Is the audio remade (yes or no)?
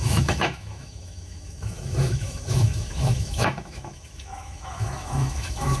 yes